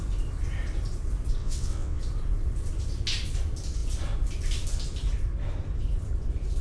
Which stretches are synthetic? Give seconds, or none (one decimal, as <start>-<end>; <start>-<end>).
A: 1.4-2.0